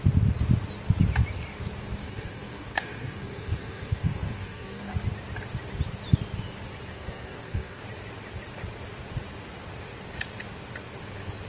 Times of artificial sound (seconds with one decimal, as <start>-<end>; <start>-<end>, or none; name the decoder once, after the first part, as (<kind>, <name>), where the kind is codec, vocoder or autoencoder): 2.0-4.9 (codec, SNAC); 6.9-7.8